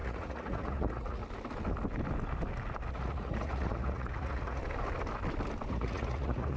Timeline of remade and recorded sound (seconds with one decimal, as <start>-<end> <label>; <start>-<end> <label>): 0.0-1.2 remade; 1.2-2.9 recorded; 2.9-4.6 remade; 4.6-5.7 recorded; 5.7-6.6 remade